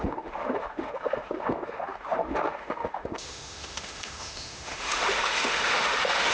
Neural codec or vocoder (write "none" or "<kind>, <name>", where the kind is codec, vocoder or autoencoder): autoencoder, DAC-VAE